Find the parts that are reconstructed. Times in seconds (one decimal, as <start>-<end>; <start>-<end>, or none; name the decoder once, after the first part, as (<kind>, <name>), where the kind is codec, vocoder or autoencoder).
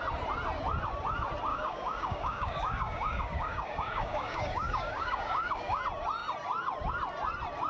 1.5-5.8 (codec, DAC)